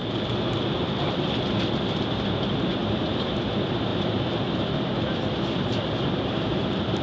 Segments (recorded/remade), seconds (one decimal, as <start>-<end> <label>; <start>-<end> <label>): 0.0-2.8 recorded; 2.8-3.3 remade; 3.3-3.9 recorded; 3.9-4.9 remade; 4.9-7.0 recorded